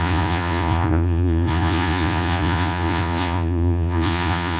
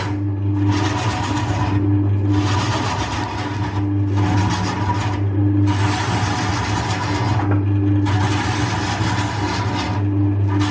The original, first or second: second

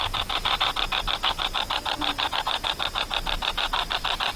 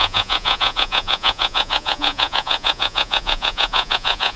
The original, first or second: first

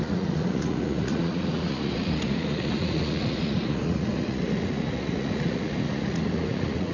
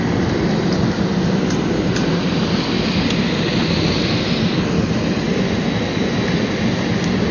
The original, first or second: second